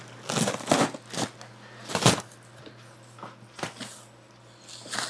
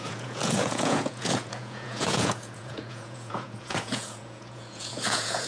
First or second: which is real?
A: first